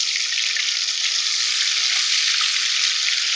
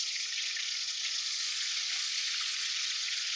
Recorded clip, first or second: first